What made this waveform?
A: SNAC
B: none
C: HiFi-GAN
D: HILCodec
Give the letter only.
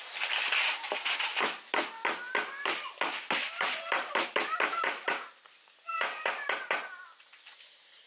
B